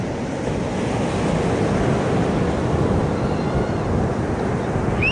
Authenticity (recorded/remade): recorded